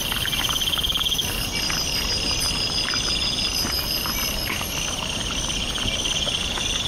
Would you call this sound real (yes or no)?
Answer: yes